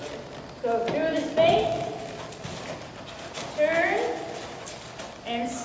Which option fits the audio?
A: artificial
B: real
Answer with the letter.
B